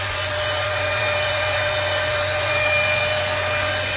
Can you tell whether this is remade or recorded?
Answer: remade